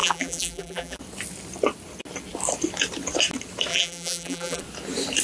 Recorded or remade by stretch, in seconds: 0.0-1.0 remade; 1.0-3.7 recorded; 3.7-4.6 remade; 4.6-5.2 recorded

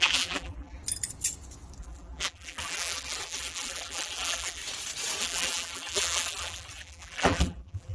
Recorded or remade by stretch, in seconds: 0.0-0.8 remade; 0.8-1.8 recorded; 1.8-4.6 remade; 4.6-5.2 recorded; 5.2-7.9 remade

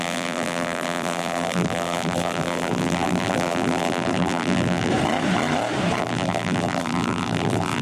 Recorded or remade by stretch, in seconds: 0.0-4.9 remade; 4.9-6.0 recorded; 6.0-7.8 remade

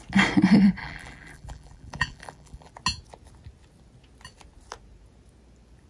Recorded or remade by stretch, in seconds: 0.0-0.8 recorded; 0.8-2.7 remade; 2.7-5.9 recorded

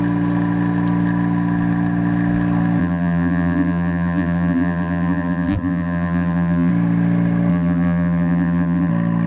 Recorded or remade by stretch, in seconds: 0.0-2.8 recorded; 2.8-6.7 remade; 6.7-7.5 recorded; 7.5-8.9 remade; 8.9-9.3 recorded

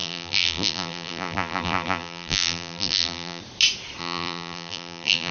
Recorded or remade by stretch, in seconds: 0.0-3.4 remade; 3.4-4.0 recorded; 4.0-5.3 remade

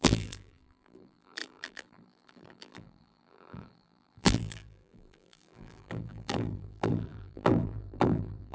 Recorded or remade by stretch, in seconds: 0.0-8.5 remade